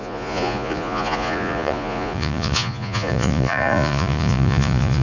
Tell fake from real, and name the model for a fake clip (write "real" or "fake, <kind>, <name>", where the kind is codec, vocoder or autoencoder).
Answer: fake, vocoder, Vocos